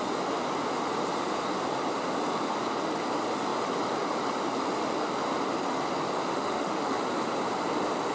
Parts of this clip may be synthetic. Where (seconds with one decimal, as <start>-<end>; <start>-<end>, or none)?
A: 6.3-7.0